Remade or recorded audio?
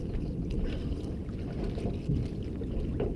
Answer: recorded